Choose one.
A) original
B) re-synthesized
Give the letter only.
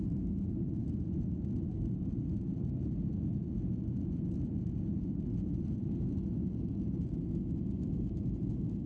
A